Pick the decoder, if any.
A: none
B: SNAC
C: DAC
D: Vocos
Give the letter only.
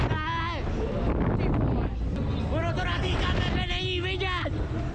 A